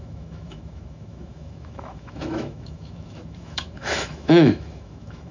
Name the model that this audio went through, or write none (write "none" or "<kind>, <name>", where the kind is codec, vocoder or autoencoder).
autoencoder, DAC-VAE